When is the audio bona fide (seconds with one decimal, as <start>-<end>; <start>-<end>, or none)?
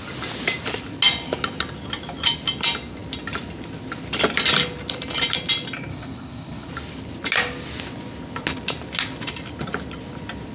0.0-5.9; 6.7-10.5